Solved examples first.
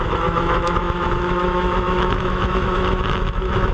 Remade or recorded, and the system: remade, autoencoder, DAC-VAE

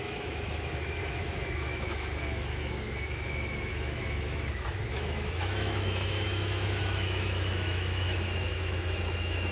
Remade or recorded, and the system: remade, autoencoder, DAC-VAE